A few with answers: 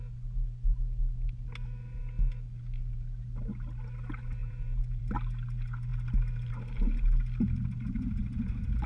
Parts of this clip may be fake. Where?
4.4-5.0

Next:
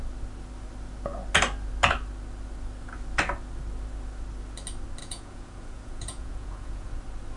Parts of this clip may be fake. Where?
5.0-7.0

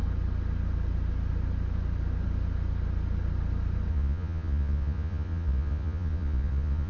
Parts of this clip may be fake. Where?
3.9-6.9

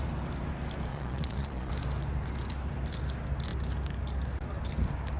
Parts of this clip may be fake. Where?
0.9-1.7

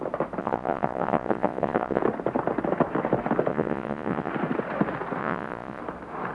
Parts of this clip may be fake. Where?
0.4-2.0; 3.5-4.3; 5.2-5.8

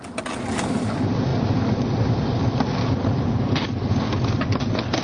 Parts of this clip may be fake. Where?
none